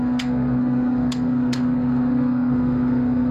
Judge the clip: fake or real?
fake